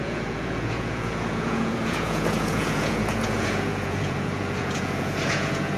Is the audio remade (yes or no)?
yes